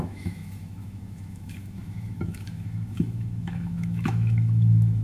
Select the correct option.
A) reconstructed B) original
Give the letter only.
A